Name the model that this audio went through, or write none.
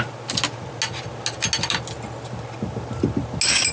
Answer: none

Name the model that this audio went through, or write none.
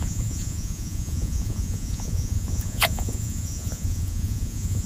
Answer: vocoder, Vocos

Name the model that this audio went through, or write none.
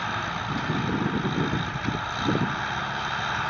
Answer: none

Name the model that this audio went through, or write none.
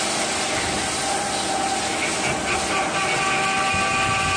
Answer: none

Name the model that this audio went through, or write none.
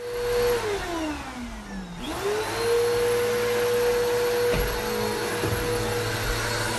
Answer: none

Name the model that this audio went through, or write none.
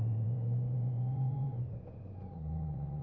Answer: vocoder, Vocos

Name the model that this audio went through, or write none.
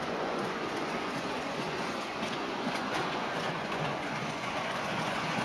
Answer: vocoder, Vocos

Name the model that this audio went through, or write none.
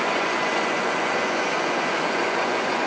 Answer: vocoder, Vocos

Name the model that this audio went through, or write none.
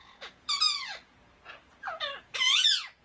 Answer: vocoder, Vocos